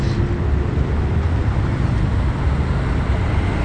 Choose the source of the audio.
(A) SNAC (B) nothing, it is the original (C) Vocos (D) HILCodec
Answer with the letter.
B